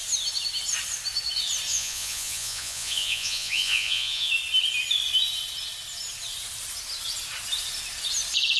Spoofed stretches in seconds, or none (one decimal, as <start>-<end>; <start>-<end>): 1.7-4.3